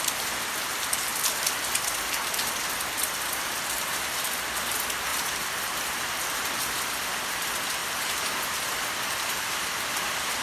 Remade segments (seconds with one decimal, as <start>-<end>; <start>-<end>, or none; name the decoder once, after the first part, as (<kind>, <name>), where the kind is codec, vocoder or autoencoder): 1.1-1.9 (vocoder, BigVGAN v2); 5.1-6.9; 7.8-10.4